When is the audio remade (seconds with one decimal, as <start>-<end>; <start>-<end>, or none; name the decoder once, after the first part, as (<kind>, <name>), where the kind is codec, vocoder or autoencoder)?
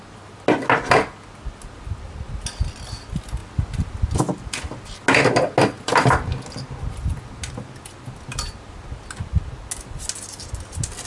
none